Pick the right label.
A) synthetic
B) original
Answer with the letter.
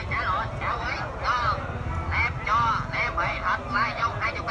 B